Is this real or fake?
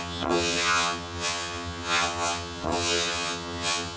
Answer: fake